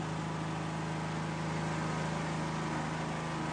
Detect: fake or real real